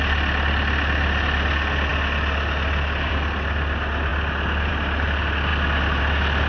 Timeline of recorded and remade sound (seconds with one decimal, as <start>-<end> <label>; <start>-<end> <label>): 0.0-6.5 recorded